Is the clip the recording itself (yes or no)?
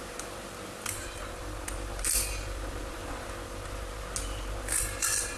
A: yes